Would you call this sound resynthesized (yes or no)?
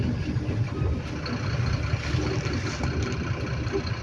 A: no